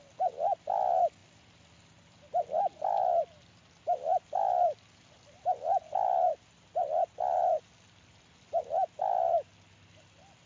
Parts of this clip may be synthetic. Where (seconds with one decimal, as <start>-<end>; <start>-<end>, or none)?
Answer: none

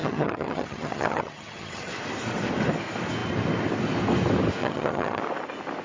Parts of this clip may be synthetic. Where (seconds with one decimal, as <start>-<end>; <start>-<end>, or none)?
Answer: 0.0-1.9; 4.6-5.2

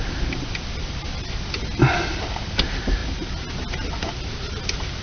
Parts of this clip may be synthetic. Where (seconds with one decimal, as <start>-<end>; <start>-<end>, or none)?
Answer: none

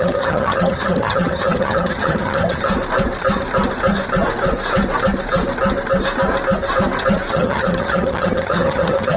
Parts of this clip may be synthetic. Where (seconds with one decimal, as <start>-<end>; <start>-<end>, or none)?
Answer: 0.0-2.7; 7.3-9.2

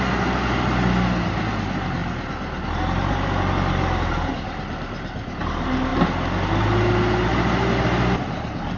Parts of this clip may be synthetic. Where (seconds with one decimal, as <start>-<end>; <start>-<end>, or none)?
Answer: none